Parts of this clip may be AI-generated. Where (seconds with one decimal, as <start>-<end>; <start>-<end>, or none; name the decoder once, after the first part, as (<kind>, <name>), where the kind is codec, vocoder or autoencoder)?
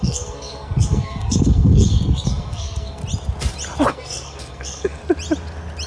0.0-3.0 (codec, SNAC); 3.9-5.0